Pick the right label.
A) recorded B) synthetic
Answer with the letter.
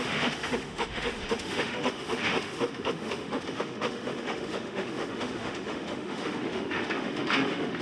B